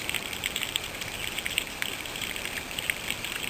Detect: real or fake fake